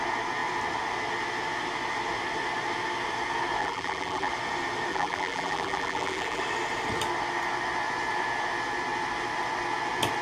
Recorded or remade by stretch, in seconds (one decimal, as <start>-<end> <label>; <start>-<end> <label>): 0.0-3.6 recorded; 3.6-4.3 remade; 4.3-4.9 recorded; 4.9-6.4 remade; 6.4-10.2 recorded